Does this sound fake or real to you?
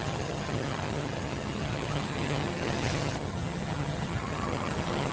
fake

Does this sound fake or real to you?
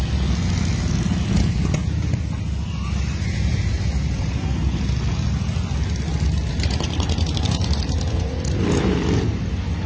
real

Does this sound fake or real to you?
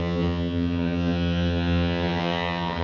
fake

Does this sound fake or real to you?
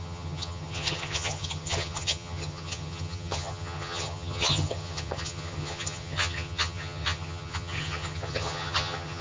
fake